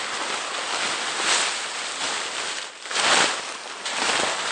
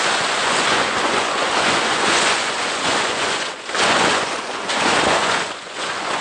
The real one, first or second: first